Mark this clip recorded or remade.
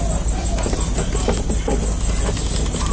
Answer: recorded